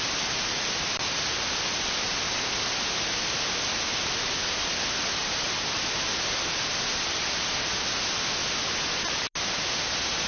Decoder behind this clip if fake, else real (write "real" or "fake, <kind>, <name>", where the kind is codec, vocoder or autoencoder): real